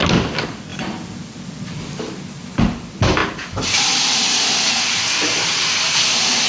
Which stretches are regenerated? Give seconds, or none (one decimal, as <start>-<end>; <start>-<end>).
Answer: 3.2-4.1